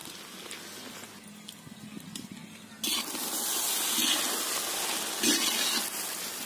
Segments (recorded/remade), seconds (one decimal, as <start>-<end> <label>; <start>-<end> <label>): 0.0-6.5 recorded